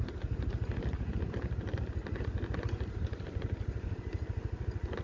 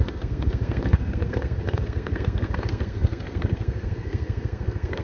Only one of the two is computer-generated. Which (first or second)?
second